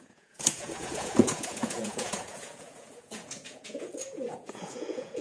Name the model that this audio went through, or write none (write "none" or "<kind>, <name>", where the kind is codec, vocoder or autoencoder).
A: vocoder, Vocos